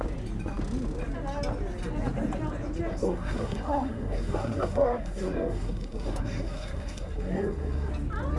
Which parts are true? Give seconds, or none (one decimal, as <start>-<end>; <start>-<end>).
0.0-2.9; 7.9-8.4